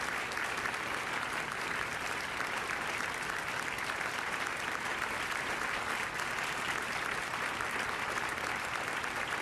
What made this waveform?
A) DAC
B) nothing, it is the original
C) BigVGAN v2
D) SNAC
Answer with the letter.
C